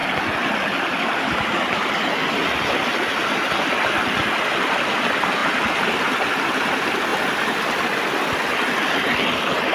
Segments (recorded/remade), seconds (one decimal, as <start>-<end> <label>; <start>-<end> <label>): 0.0-5.4 recorded; 5.4-5.9 remade; 5.9-9.7 recorded